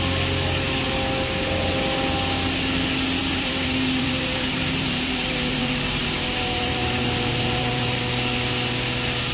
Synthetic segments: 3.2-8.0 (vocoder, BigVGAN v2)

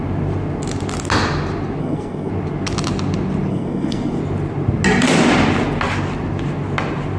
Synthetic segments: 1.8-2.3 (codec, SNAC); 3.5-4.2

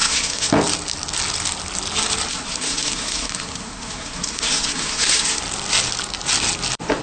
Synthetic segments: 0.0-0.5 (codec, SNAC); 2.3-5.4

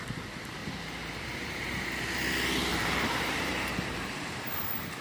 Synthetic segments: 0.6-2.0 (vocoder, BigVGAN v2); 2.7-5.0

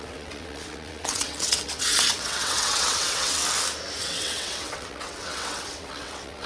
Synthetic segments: 0.0-3.4 (vocoder, WaveNeXt); 4.0-6.5

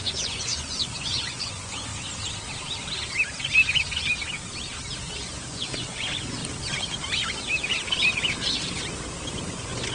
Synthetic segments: 0.0-1.9 (vocoder, Vocos); 5.2-6.4; 9.5-9.9